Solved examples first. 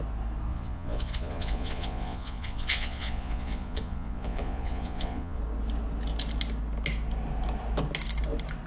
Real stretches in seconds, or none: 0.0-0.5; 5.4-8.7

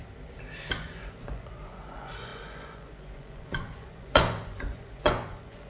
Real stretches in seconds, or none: 0.0-0.8

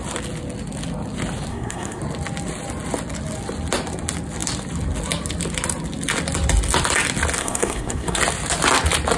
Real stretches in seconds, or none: 0.0-1.5; 2.0-7.4; 8.2-9.2

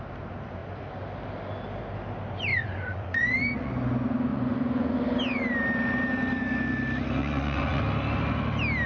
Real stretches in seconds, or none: 0.0-2.5; 3.7-4.3; 5.0-7.2; 7.8-8.9

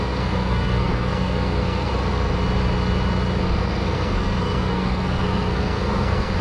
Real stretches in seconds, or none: 1.9-3.4